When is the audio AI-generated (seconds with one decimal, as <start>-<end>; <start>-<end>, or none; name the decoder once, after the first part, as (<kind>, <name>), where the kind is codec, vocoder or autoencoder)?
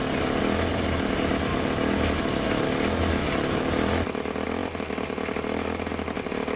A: 3.2-4.0 (vocoder, BigVGAN v2)